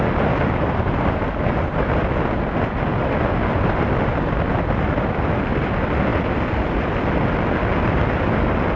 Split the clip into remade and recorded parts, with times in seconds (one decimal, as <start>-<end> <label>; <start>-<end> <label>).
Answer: 0.0-8.8 recorded